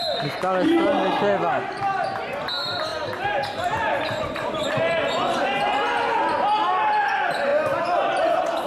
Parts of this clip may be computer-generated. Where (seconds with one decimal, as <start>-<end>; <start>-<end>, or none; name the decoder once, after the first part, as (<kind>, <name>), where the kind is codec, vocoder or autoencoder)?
none